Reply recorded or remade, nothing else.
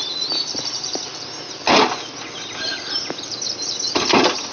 recorded